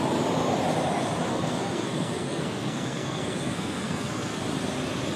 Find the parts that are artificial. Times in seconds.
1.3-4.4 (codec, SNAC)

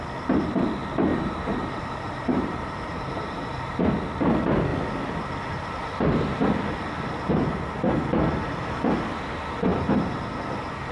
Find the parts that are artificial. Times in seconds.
1.1-3.8 (vocoder, BigVGAN v2); 9.7-10.4